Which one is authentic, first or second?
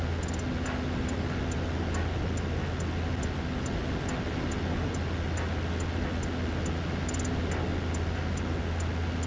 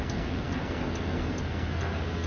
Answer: first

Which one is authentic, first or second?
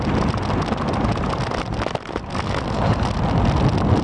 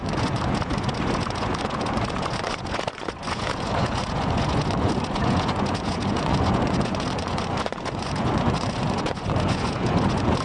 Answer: first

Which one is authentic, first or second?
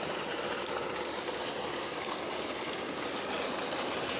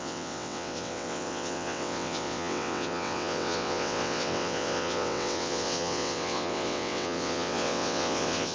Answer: first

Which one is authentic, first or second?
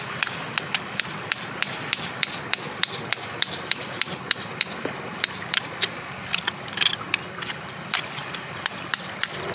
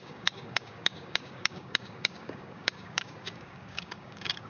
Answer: first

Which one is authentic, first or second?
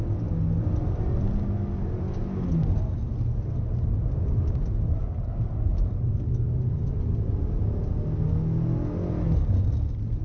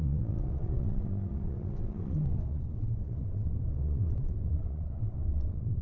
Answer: first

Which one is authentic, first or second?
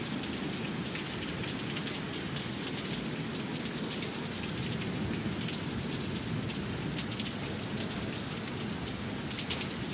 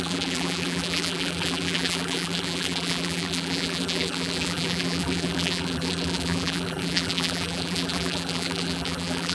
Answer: first